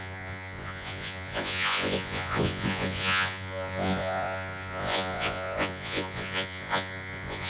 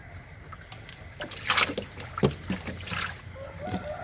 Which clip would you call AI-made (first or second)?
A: first